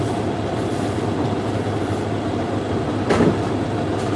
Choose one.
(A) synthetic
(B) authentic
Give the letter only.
B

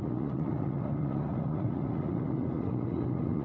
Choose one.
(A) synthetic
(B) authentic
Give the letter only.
A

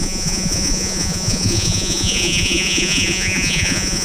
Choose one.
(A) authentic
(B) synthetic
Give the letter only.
B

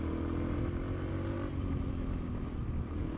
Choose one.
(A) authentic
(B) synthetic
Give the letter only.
A